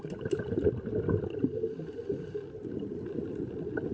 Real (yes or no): yes